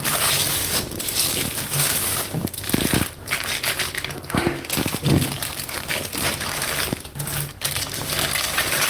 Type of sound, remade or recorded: remade